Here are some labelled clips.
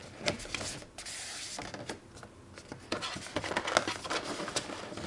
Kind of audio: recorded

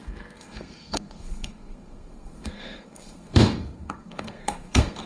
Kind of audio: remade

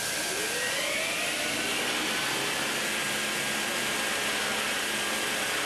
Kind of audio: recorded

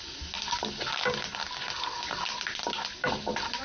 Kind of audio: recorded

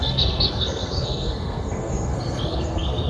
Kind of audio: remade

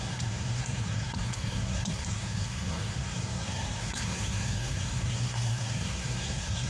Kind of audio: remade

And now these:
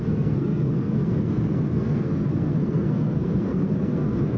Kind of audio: remade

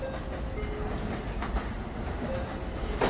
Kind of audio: recorded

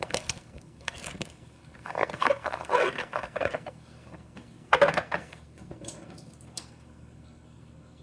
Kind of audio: remade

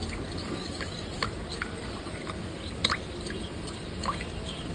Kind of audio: recorded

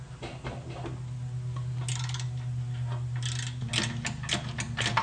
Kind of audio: recorded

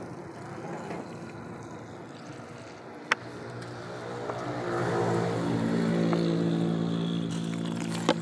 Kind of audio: recorded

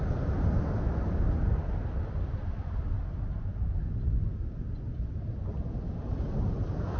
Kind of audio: recorded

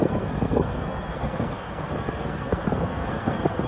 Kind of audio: remade